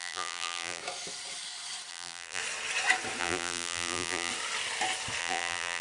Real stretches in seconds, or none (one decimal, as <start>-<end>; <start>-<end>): 0.8-1.9; 2.4-3.2; 4.3-5.2